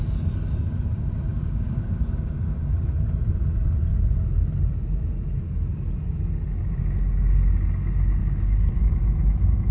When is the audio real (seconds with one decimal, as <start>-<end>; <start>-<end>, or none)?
0.0-1.3; 2.9-8.2; 8.9-9.7